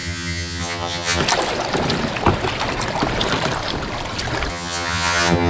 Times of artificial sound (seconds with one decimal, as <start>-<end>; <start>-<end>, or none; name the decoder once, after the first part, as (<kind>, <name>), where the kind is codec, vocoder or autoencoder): 0.0-1.2 (vocoder, HiFi-GAN); 4.5-5.5